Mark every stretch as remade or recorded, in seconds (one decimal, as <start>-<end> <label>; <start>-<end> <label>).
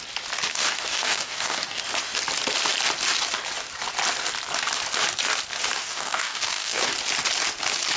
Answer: 0.0-0.5 recorded; 0.5-1.8 remade; 1.8-5.8 recorded; 5.8-6.9 remade; 6.9-8.0 recorded